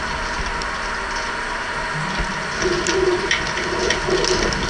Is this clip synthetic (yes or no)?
no